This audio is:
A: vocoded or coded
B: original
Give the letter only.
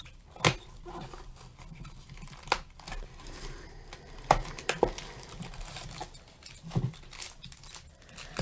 B